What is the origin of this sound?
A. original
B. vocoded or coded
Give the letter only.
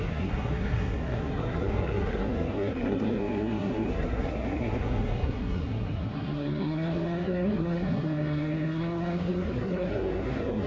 B